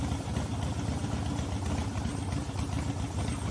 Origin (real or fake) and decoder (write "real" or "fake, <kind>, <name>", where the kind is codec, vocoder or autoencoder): real